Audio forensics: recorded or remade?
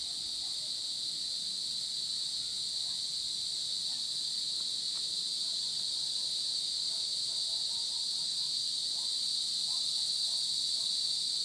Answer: recorded